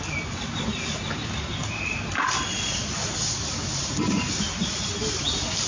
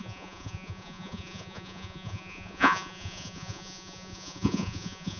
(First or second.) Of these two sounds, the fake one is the second